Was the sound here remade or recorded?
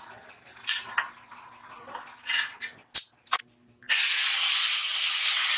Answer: recorded